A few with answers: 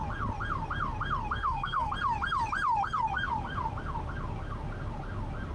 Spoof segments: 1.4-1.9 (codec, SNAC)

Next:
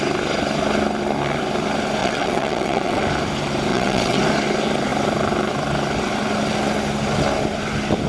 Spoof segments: 2.0-3.0 (vocoder, WaveNeXt); 3.7-4.2

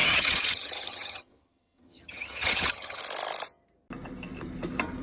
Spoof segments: 0.0-3.0 (vocoder, HiFi-GAN)

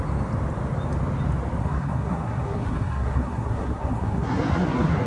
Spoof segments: 1.6-5.1 (codec, SNAC)

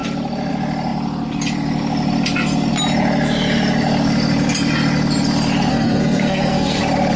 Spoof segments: 5.7-6.8 (codec, SNAC)

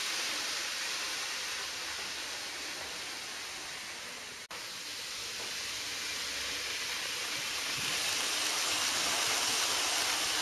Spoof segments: none

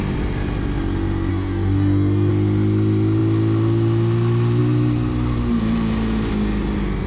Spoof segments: 1.3-2.3 (codec, DAC)

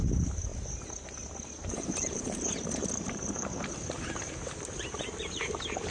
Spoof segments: 0.0-0.5 (vocoder, BigVGAN v2); 1.7-5.9